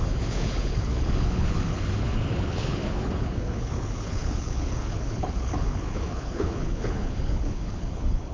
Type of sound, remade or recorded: remade